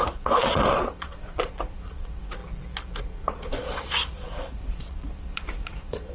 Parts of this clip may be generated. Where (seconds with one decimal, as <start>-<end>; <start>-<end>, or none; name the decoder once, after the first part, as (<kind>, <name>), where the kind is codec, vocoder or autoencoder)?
0.0-2.4 (vocoder, Vocos); 3.0-6.1